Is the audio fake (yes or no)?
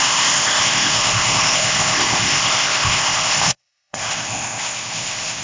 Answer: yes